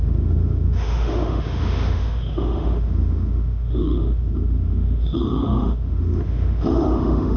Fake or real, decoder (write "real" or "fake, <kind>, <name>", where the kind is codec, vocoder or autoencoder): fake, autoencoder, DAC-VAE